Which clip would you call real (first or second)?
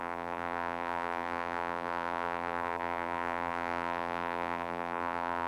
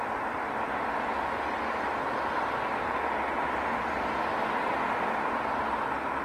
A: second